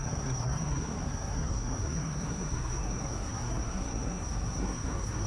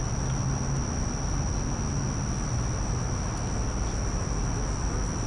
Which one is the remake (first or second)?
first